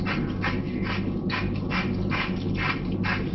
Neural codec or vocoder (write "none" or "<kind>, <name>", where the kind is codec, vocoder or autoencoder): none